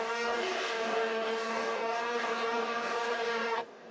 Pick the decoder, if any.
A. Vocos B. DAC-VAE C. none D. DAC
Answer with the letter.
D